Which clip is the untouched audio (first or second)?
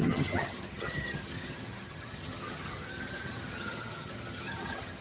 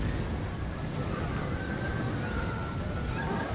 second